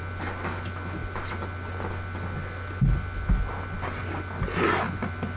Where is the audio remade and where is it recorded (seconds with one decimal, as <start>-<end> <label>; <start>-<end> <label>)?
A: 0.0-5.4 recorded